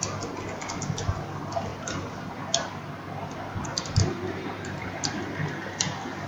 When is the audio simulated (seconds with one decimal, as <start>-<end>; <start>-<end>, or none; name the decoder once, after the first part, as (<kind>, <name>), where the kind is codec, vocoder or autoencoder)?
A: 1.7-2.4 (vocoder, BigVGAN v2); 3.7-5.5